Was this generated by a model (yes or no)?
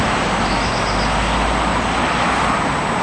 no